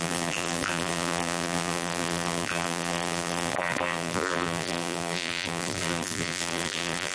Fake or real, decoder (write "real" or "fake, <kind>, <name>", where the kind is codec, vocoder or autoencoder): fake, vocoder, BigVGAN v2